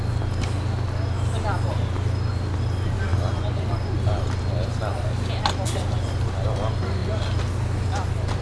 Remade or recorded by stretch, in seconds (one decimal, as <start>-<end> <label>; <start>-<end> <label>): 0.0-8.4 recorded